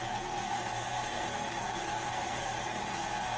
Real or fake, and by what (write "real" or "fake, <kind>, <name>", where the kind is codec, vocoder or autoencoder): fake, codec, SNAC